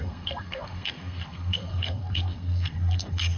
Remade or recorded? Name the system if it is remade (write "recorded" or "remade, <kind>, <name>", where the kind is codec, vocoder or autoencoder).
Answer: remade, codec, SNAC